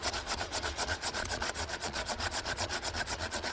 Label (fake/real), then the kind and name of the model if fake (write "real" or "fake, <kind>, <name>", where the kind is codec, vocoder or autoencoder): fake, vocoder, Vocos